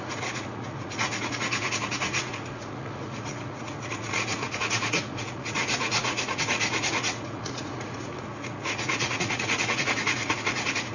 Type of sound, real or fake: fake